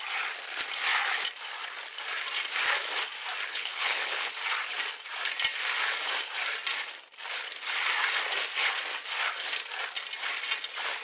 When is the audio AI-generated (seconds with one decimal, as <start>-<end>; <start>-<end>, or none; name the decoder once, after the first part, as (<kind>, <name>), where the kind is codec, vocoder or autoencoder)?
3.5-4.3 (codec, HILCodec)